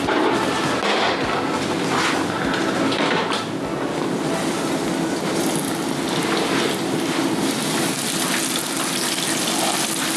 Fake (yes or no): no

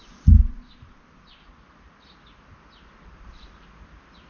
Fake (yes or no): no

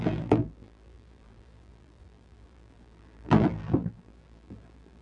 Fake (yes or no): yes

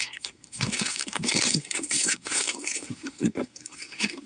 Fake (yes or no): yes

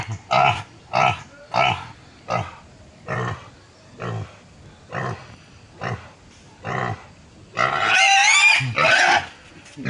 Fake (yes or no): no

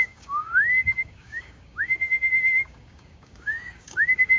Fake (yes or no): yes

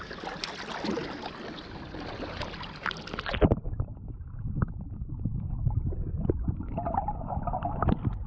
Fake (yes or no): no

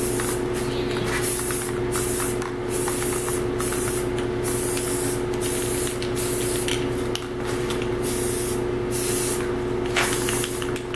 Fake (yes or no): no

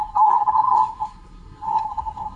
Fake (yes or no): yes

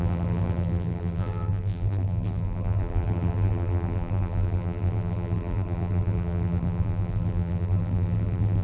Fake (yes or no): yes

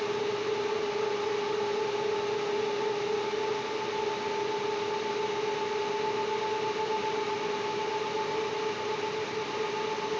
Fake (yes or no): no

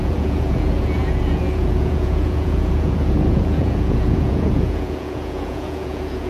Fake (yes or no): yes